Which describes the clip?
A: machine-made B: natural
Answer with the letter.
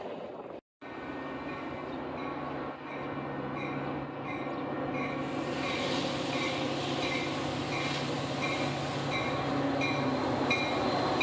B